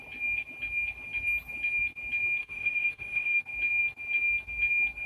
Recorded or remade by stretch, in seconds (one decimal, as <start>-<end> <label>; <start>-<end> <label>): 0.0-2.4 recorded; 2.4-3.4 remade; 3.4-5.1 recorded